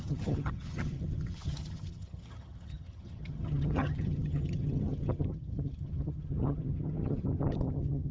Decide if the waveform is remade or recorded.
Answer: remade